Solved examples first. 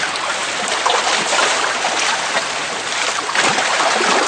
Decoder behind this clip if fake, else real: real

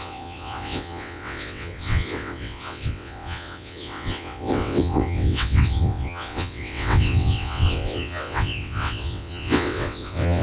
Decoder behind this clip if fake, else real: fake, vocoder, WaveNeXt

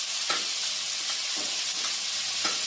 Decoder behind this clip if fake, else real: fake, vocoder, WaveNeXt